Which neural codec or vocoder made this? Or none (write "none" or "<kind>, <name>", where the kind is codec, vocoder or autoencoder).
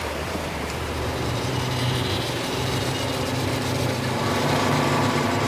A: vocoder, BigVGAN v2